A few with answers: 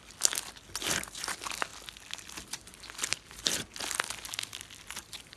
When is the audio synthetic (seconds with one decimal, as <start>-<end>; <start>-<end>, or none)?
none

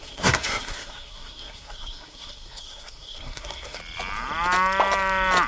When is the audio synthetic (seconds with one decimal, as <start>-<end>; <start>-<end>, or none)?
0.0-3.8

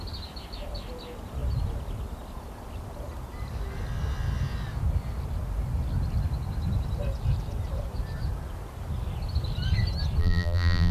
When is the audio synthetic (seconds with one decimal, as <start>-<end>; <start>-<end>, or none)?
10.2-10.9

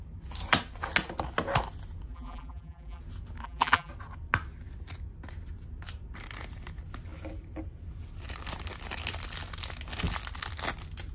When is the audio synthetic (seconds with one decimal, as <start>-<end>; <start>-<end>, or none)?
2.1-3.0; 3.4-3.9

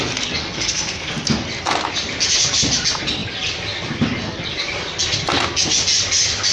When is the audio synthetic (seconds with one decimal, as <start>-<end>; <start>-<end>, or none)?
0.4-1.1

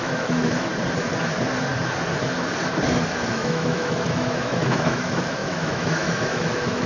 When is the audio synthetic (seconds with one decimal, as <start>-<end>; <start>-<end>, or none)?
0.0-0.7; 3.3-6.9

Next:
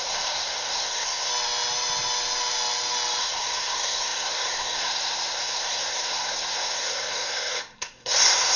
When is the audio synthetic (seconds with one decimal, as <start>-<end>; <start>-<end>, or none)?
0.0-1.3; 3.2-8.6

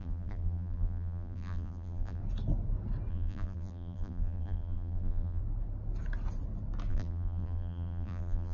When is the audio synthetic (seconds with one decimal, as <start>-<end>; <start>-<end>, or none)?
0.0-2.2; 3.1-5.4; 6.9-8.5